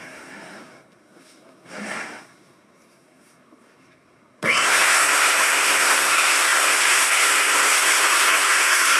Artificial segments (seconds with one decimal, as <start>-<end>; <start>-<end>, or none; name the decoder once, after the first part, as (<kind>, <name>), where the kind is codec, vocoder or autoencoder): 0.0-9.0 (codec, SNAC)